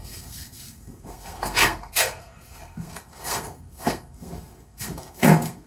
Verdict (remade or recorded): remade